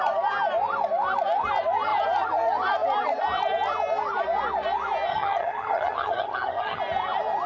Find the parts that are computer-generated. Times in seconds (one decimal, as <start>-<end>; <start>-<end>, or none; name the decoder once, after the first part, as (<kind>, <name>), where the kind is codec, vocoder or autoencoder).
5.1-6.8 (vocoder, HiFi-GAN)

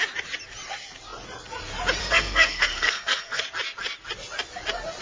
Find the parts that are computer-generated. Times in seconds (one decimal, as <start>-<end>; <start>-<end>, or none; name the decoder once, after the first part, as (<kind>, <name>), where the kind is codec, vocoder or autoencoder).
2.0-3.4 (codec, SNAC)

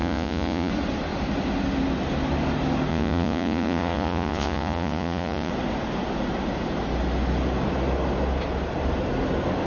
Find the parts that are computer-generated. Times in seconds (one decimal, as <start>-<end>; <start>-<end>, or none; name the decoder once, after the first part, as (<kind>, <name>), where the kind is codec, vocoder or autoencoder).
0.0-0.7 (vocoder, Vocos); 2.9-5.5

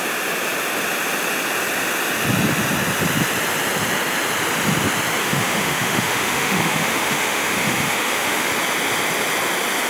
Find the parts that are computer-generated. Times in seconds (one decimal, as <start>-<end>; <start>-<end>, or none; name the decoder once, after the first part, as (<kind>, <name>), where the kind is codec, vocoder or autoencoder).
5.2-8.5 (autoencoder, DAC-VAE)

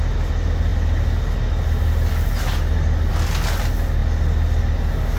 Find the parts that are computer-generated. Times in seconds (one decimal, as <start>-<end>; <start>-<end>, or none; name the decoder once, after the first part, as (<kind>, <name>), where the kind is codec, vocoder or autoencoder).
none

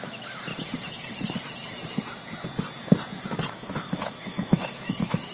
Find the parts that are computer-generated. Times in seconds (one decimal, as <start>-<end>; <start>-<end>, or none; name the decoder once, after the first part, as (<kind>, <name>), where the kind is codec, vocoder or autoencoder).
0.0-0.5 (autoencoder, DAC-VAE); 3.5-5.3